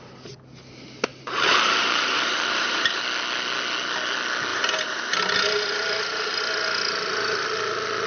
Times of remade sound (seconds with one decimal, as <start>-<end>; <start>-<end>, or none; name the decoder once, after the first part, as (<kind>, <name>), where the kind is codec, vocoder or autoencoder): 1.1-3.0 (vocoder, BigVGAN v2); 4.5-6.4